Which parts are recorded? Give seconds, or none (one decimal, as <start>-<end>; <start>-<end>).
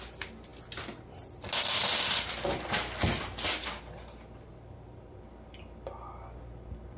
0.0-7.0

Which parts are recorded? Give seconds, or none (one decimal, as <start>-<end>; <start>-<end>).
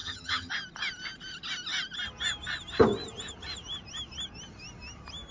0.5-5.3